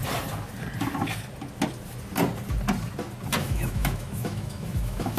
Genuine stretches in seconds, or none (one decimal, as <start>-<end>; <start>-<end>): 0.0-3.4